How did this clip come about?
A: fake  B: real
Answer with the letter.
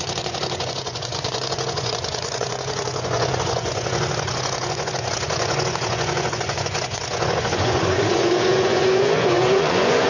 A